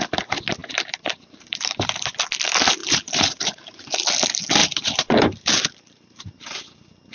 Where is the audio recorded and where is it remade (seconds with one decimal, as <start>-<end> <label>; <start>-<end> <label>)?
0.0-0.6 recorded; 0.6-2.1 remade; 2.1-2.8 recorded; 2.8-3.9 remade; 3.9-4.6 recorded; 4.6-6.3 remade; 6.3-7.1 recorded

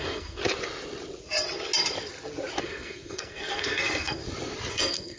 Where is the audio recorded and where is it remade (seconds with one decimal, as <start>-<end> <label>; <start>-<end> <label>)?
0.0-0.4 remade; 0.4-2.6 recorded; 2.6-4.2 remade; 4.2-4.7 recorded; 4.7-5.2 remade

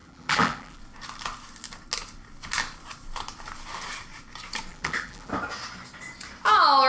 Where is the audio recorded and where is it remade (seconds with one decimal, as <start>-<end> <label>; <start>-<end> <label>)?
0.0-0.8 remade; 0.8-4.7 recorded; 4.7-5.3 remade; 5.3-6.9 recorded

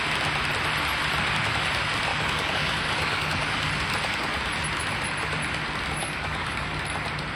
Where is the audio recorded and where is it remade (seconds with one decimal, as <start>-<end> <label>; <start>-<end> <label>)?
0.0-2.1 recorded; 2.1-3.7 remade; 3.7-6.0 recorded; 6.0-6.7 remade; 6.7-7.4 recorded